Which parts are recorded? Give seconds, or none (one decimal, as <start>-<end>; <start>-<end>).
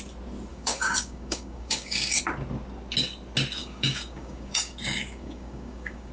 0.0-0.5; 2.2-3.6